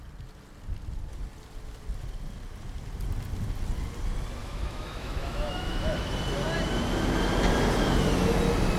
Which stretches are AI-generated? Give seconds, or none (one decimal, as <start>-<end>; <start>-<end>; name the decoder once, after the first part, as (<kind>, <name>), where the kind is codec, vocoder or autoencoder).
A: 4.4-6.1 (autoencoder, DAC-VAE)